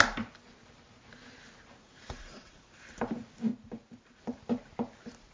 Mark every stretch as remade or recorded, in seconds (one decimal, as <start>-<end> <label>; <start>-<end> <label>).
0.0-1.8 recorded; 1.8-2.7 remade; 2.7-5.3 recorded

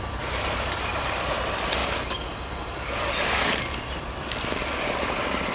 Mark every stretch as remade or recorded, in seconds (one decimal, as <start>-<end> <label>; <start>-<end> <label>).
0.0-1.8 remade; 1.8-5.1 recorded; 5.1-5.5 remade